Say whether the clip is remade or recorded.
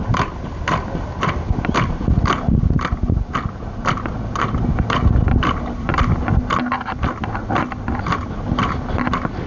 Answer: recorded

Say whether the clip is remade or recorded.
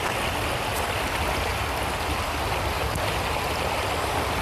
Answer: remade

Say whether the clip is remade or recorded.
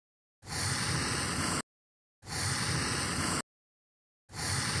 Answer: recorded